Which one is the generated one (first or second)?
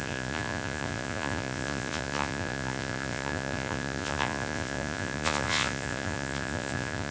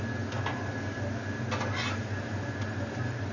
first